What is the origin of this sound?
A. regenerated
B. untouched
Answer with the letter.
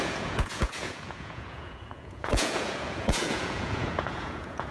A